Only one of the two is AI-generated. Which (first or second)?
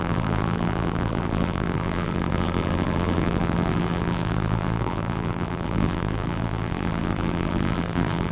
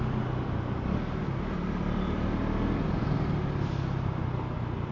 first